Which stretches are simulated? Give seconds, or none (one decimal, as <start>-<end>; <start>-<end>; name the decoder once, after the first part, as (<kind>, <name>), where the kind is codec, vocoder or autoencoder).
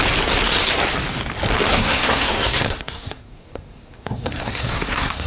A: 1.7-5.3 (codec, SNAC)